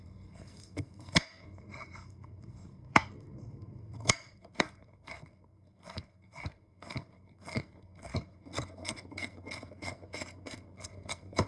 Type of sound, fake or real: fake